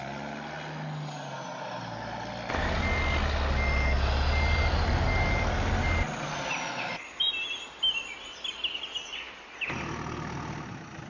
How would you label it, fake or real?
real